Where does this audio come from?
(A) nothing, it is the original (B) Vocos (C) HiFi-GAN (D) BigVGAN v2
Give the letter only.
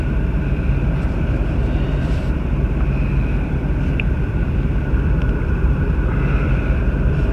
D